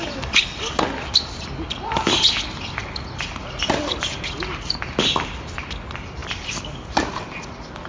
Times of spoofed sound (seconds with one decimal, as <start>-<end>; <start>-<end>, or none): none